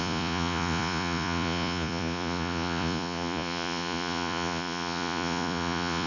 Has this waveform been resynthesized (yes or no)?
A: yes